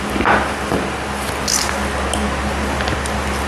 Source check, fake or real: real